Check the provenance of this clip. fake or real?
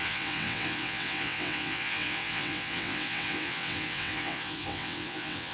fake